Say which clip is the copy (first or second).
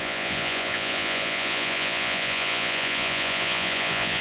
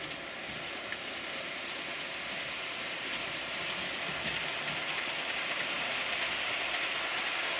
first